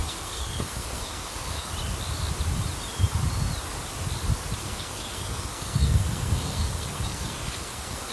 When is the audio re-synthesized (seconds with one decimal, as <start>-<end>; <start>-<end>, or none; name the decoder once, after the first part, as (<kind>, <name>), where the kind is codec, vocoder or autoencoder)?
0.0-1.7 (codec, SNAC); 4.6-8.1